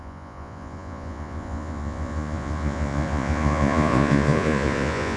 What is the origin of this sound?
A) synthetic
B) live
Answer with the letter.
A